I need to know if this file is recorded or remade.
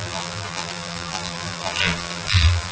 remade